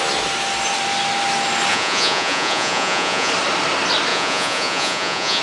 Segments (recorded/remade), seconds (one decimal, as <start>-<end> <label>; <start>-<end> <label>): 0.0-1.7 recorded; 1.7-3.3 remade; 3.3-4.1 recorded; 4.1-5.4 remade